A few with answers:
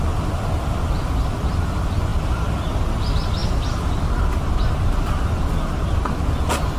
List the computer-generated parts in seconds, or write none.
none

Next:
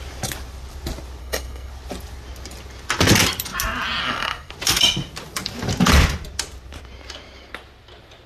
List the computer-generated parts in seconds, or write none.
1.2-1.7 (codec, SNAC); 4.0-4.5